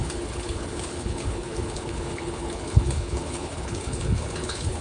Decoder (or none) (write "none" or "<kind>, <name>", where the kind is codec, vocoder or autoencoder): codec, HILCodec